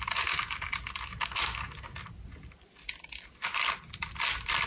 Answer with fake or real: real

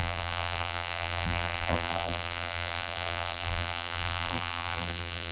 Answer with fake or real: fake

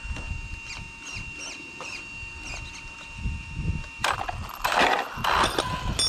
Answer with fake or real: real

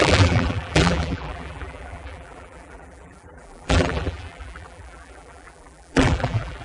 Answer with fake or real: fake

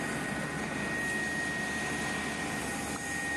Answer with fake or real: real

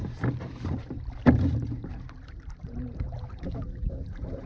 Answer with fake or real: fake